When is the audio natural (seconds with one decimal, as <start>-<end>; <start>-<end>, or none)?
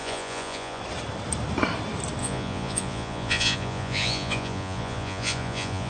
0.8-2.2